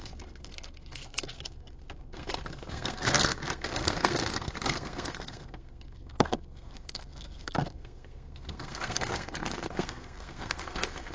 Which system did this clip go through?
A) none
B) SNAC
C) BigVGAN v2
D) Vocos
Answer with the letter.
B